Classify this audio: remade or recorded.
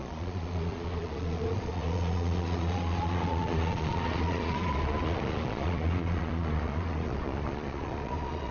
remade